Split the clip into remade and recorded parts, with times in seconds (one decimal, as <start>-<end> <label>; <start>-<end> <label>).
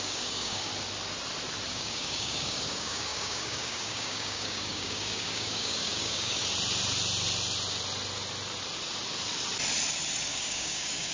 0.0-0.7 remade; 0.7-1.7 recorded; 1.7-6.4 remade; 6.4-10.3 recorded; 10.3-11.1 remade